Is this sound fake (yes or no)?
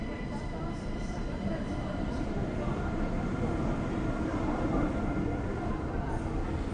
yes